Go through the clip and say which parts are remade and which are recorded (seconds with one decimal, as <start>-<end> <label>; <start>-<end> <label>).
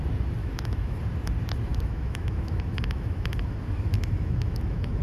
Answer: 0.0-0.4 recorded; 0.4-1.0 remade; 1.0-1.7 recorded; 1.7-5.0 remade